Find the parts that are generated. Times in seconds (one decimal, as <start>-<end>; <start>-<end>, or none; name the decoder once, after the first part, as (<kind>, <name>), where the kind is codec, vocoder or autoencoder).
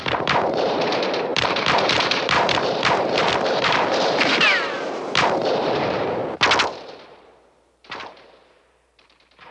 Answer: 0.0-6.2 (vocoder, BigVGAN v2); 7.1-9.5